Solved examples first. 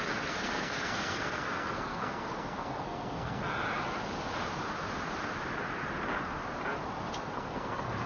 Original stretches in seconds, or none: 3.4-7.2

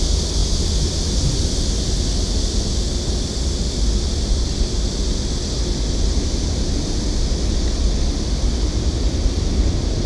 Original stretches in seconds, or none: 0.0-10.1